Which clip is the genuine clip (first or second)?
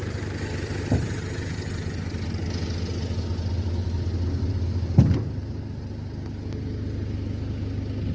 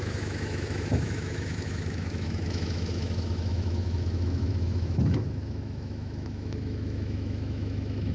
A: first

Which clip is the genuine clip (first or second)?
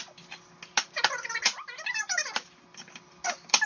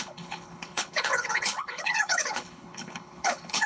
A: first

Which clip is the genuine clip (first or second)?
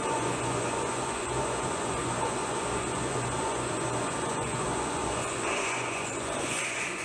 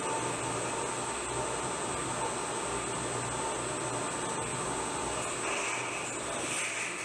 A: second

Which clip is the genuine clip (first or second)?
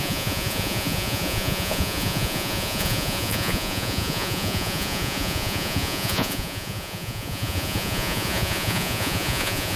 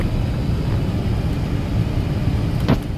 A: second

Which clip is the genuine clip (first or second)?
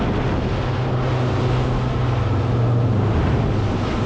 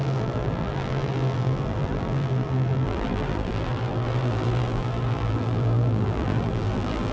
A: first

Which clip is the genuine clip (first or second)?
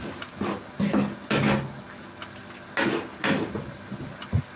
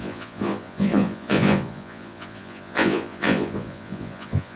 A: first